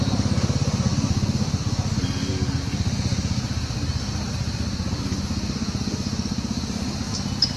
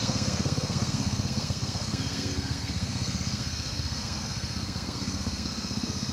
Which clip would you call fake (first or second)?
second